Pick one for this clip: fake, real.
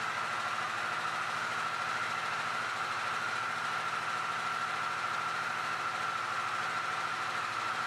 real